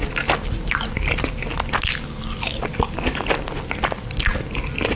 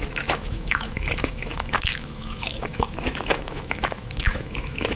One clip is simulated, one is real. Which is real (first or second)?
first